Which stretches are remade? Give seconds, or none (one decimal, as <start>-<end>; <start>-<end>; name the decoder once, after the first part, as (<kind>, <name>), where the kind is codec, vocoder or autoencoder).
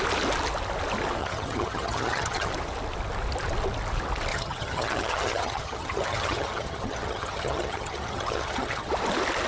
1.2-2.5 (vocoder, HiFi-GAN); 4.3-8.9